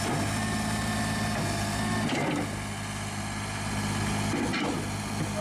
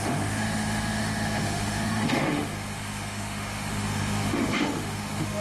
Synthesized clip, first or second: second